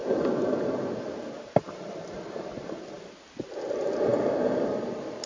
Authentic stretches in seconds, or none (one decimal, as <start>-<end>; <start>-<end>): 0.0-5.3

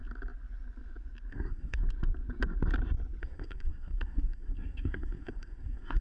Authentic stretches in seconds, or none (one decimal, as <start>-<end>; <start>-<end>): 0.0-1.3; 1.8-3.2

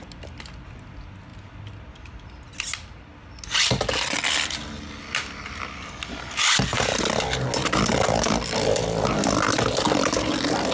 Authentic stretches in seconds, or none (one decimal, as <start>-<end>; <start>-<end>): 0.0-10.7